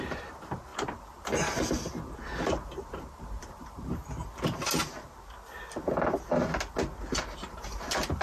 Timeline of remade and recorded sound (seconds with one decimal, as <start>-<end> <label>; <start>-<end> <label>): 0.0-0.7 remade; 0.7-2.9 recorded; 2.9-4.0 remade; 4.0-7.5 recorded; 7.5-8.2 remade